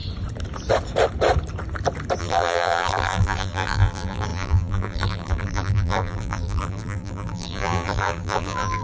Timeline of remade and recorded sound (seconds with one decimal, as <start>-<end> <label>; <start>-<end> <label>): 0.0-2.2 recorded; 2.2-8.8 remade